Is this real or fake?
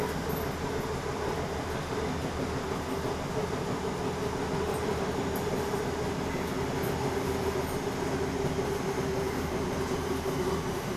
real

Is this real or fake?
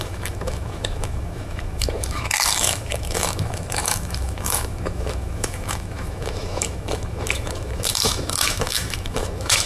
fake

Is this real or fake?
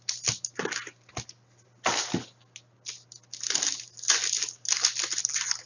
real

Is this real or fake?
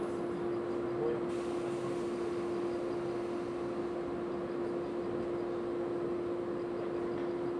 real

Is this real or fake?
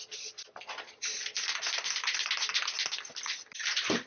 real